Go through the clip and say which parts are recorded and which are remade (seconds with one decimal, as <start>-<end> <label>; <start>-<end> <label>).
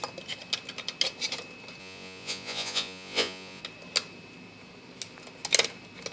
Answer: 0.0-1.8 recorded; 1.8-3.6 remade; 3.6-6.1 recorded